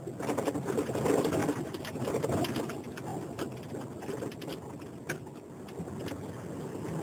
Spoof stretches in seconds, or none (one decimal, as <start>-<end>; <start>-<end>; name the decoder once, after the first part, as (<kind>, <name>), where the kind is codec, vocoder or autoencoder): 1.4-2.1 (vocoder, BigVGAN v2); 3.1-3.7